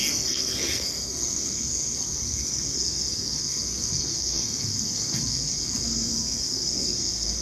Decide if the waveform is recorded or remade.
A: remade